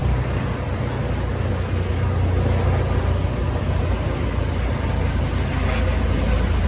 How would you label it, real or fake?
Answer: real